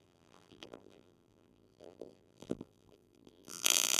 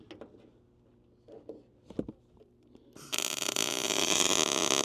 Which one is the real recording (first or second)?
second